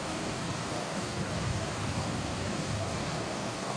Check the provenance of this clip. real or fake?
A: fake